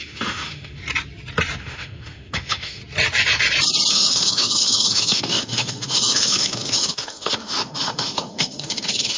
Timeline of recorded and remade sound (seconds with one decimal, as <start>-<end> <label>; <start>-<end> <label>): 0.0-0.8 remade; 0.8-1.6 recorded; 1.6-2.8 remade; 2.8-3.9 recorded; 3.9-9.2 remade